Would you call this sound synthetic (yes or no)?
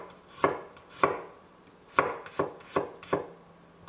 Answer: no